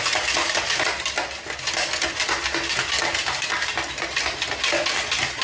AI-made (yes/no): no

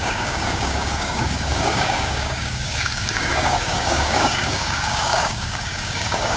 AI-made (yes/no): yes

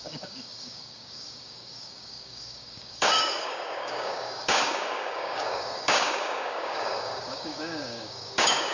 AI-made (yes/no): yes